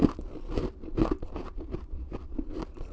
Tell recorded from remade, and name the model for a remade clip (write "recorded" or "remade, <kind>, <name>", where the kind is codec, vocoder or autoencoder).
recorded